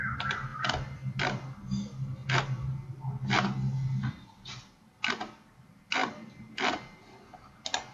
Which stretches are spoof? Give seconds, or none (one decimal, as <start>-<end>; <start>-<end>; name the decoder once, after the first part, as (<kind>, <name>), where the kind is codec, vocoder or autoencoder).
none